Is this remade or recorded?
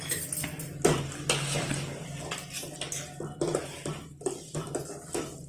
recorded